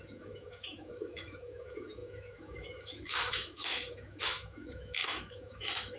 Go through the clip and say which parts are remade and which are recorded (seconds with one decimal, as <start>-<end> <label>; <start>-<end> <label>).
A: 0.0-6.0 remade